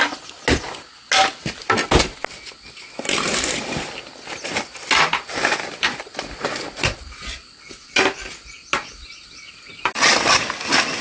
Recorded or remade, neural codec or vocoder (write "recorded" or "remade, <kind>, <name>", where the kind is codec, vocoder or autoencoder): recorded